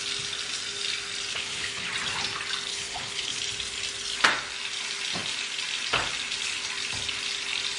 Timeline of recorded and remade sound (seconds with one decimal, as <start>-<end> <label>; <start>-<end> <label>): 0.0-1.3 recorded; 1.3-1.9 remade; 1.9-2.7 recorded; 2.7-3.4 remade; 3.4-7.8 recorded